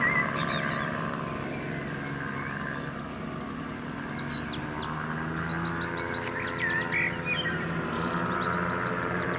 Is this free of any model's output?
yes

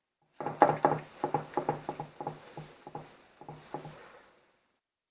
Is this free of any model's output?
yes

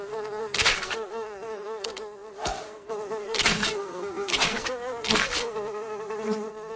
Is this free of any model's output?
no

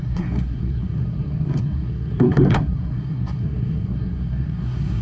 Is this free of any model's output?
no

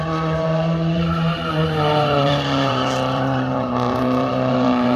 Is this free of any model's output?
no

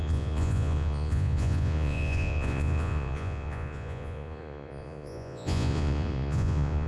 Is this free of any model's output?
no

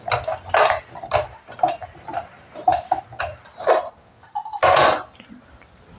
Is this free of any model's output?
yes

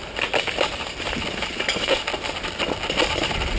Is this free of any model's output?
yes